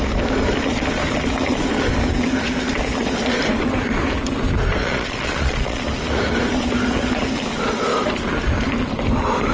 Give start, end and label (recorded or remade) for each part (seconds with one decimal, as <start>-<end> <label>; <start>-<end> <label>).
0.0-4.8 recorded; 4.8-5.8 remade; 5.8-9.5 recorded